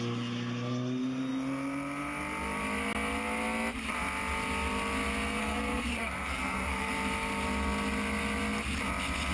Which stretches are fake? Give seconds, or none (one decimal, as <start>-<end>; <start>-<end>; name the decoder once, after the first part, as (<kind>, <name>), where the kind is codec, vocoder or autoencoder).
5.4-6.9 (codec, SNAC)